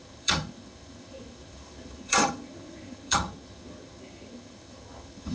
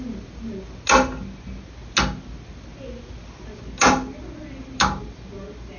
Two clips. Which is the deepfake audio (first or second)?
first